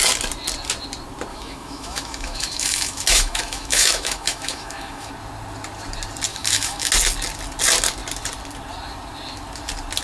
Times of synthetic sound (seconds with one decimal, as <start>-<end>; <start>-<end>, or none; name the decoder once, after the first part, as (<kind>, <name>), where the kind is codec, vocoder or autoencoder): 1.3-5.1 (autoencoder, DAC-VAE); 6.3-6.9